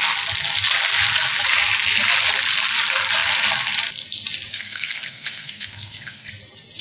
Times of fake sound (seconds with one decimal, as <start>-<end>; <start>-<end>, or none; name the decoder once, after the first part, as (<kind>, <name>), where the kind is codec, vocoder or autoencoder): 4.5-6.3 (codec, SNAC)